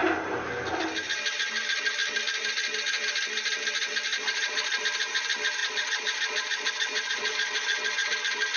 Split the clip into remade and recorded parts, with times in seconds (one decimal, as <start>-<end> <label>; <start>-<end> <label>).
0.0-4.1 recorded; 4.1-4.8 remade; 4.8-5.6 recorded; 5.6-8.1 remade; 8.1-8.6 recorded